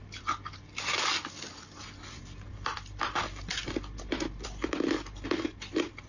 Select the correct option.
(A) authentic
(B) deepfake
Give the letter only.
A